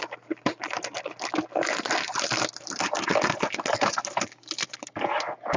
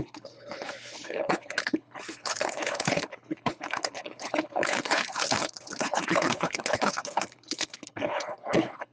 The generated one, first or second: second